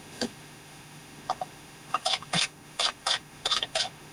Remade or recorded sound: remade